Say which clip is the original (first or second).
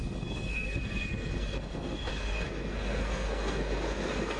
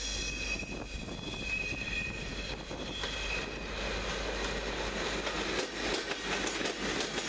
second